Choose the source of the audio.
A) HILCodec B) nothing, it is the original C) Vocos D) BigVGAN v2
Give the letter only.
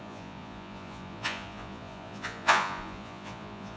C